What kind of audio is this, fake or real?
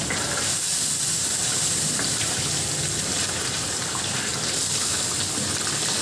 real